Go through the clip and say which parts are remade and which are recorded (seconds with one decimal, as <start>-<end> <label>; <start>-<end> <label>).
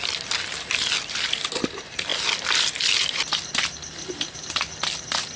0.0-5.4 recorded